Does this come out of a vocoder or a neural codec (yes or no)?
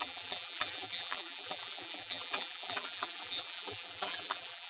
yes